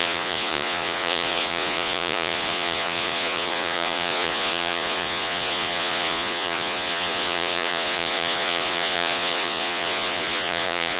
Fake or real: fake